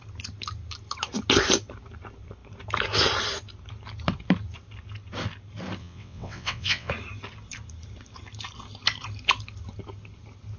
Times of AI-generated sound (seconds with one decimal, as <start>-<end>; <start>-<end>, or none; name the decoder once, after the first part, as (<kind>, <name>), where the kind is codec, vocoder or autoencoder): 5.8-6.9 (vocoder, WaveNeXt)